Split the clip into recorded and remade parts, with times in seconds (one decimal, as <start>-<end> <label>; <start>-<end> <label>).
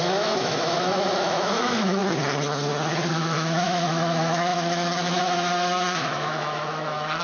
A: 0.0-2.0 remade; 2.0-3.1 recorded; 3.1-7.2 remade